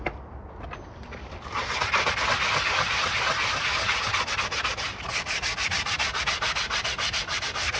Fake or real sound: real